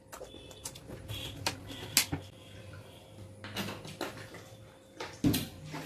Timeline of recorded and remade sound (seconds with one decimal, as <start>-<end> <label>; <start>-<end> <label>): 0.0-5.9 recorded